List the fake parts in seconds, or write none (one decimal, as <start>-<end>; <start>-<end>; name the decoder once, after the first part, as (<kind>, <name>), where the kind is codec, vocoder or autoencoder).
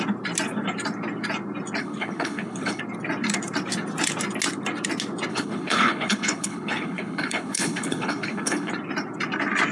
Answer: 1.8-2.8 (codec, HILCodec); 5.3-8.7